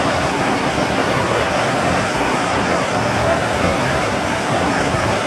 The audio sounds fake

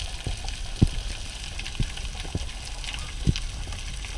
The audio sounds real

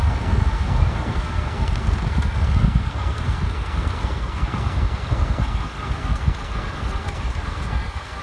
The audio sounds fake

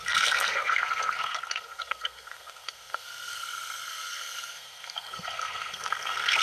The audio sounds fake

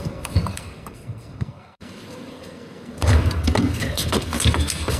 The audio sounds fake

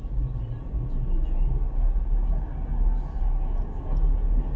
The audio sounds real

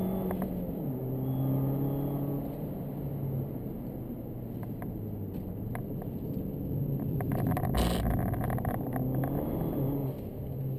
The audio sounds real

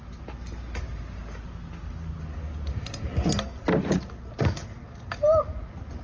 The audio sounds real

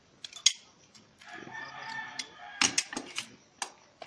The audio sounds real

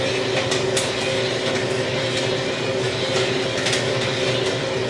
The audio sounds real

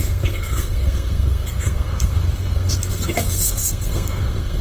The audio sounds fake